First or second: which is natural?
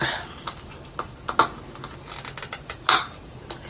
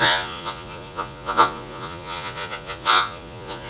first